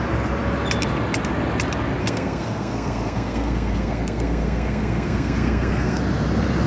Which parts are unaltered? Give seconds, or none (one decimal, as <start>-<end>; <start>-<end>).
0.0-2.0; 6.0-6.7